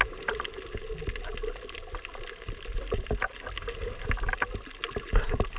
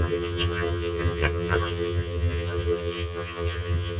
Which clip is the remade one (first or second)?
second